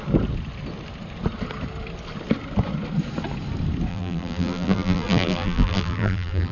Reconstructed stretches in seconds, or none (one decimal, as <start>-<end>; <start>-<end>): 3.9-6.5